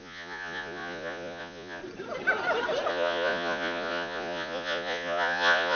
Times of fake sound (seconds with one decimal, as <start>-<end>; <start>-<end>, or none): 0.0-1.8; 2.9-5.8